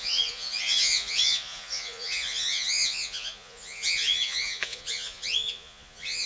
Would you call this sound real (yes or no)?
no